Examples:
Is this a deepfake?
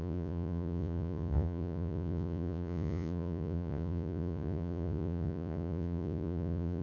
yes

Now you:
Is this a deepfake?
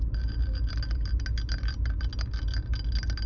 no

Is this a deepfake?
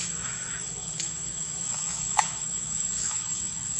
yes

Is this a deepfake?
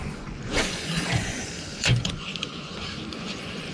yes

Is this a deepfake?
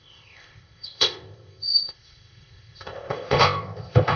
yes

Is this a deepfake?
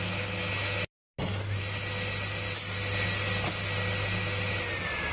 no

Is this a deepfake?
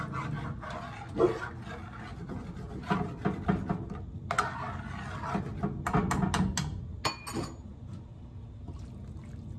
no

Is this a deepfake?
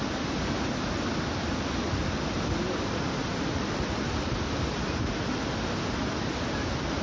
no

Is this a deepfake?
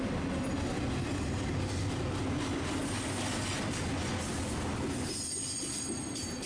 no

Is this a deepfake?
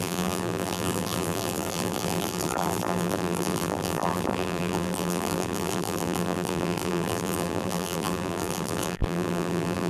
yes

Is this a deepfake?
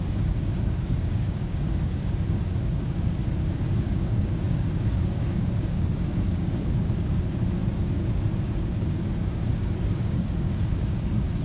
yes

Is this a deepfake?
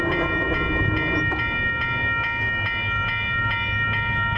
no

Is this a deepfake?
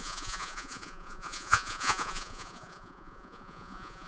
yes